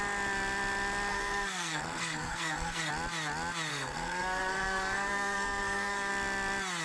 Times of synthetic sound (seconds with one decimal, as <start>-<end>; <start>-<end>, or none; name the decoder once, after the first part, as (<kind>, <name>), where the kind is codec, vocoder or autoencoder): 1.1-2.9 (codec, SNAC); 3.7-6.1